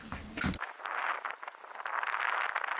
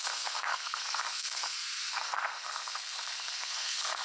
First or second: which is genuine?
first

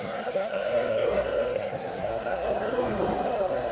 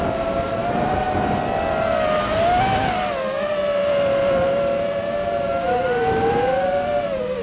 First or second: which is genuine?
second